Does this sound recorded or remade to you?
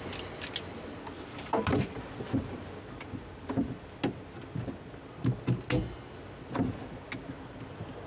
recorded